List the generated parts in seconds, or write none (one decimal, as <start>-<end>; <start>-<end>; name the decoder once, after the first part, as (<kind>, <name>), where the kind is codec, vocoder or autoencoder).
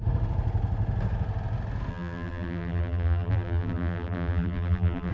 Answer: 1.9-5.1 (vocoder, BigVGAN v2)